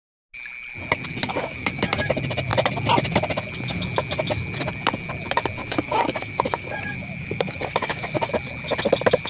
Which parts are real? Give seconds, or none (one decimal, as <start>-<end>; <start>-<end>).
0.0-1.2; 2.1-5.6; 8.3-9.3

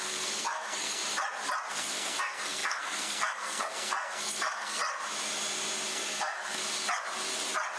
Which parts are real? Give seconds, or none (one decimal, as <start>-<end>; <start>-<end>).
1.0-1.7; 4.8-5.9; 6.6-7.8

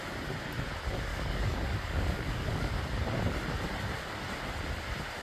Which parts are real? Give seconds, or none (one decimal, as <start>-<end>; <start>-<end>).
0.0-1.1; 2.7-5.2

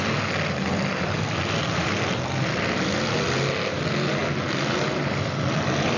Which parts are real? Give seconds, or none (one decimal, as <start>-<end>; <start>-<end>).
0.0-0.9; 2.2-4.2; 5.6-6.0